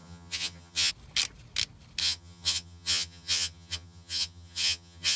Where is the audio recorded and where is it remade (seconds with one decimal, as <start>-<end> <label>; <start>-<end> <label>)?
0.0-0.9 remade; 0.9-2.0 recorded; 2.0-5.2 remade